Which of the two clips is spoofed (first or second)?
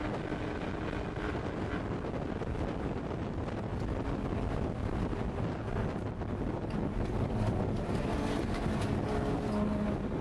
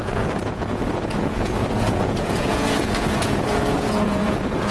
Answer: second